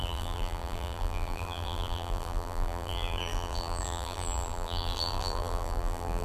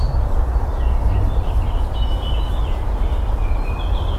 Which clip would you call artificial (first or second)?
first